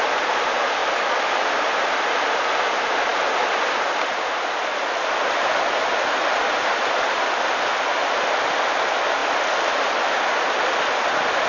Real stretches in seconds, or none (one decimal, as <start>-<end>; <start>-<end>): 0.0-11.5